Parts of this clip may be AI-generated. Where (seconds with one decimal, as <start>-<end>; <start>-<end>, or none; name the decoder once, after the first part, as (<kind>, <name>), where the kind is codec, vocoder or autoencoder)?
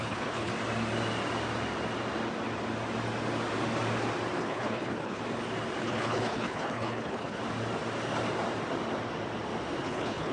0.0-0.5 (codec, HILCodec); 4.4-5.2; 5.8-7.4; 9.8-10.3